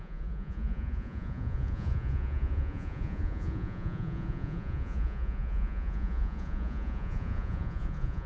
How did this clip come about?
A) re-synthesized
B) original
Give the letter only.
A